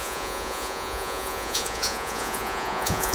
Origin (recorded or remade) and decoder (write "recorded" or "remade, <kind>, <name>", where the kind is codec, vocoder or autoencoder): remade, vocoder, Vocos